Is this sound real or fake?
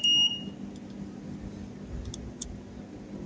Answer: real